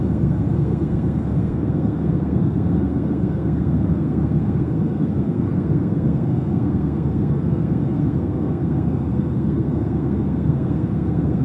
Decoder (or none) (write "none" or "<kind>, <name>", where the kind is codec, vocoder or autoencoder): codec, SNAC